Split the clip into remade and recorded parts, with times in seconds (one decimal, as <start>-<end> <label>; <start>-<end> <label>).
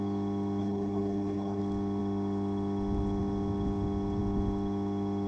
0.0-0.6 recorded; 0.6-1.6 remade; 1.6-5.3 recorded